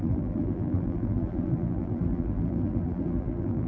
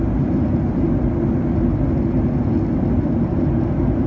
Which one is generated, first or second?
first